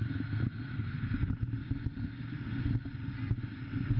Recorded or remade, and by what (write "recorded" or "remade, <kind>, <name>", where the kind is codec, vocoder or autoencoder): recorded